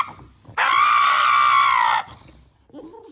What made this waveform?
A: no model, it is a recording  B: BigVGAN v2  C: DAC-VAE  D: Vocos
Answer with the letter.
A